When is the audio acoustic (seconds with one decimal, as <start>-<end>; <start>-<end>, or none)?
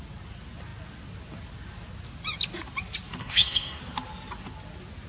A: 0.0-3.2; 3.8-5.1